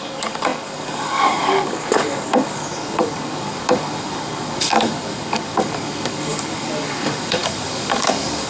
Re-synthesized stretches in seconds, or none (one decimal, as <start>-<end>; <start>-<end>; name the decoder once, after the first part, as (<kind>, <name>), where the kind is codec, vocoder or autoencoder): 0.0-8.5 (codec, DAC)